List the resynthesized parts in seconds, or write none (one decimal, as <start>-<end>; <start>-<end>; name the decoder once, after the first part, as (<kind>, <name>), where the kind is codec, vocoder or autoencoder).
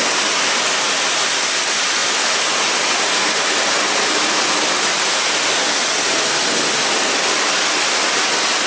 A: none